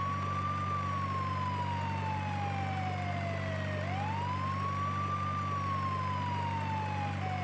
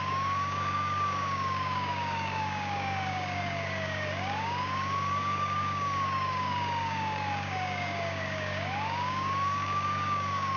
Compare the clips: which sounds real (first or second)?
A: first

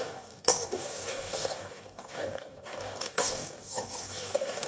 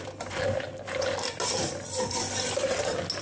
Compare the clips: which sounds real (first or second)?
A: second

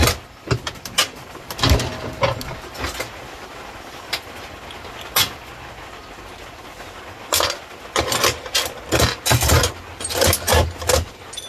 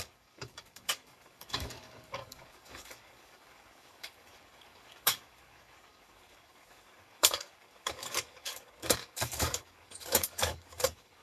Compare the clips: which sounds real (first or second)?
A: first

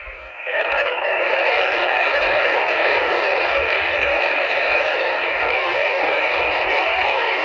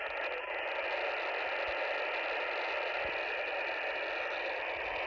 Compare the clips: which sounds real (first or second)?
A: second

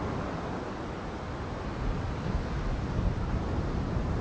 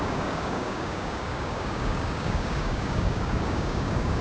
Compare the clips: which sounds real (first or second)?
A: first